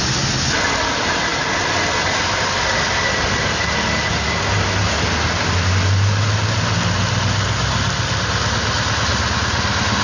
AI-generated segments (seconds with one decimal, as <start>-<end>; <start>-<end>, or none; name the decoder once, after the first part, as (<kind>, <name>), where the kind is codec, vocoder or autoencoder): none